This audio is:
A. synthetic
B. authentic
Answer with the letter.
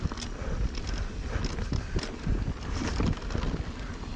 B